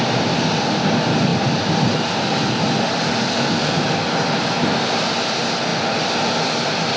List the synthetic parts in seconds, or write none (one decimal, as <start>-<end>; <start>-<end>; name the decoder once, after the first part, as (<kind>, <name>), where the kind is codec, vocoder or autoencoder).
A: 3.3-3.8 (codec, SNAC)